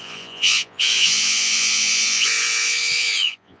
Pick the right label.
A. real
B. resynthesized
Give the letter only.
B